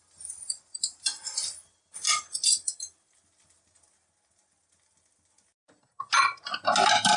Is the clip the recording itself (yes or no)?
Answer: yes